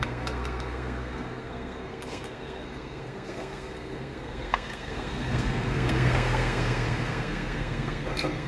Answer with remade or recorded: remade